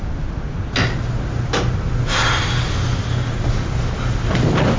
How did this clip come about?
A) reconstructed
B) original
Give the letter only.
B